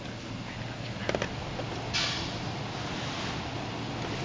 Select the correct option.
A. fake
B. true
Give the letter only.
B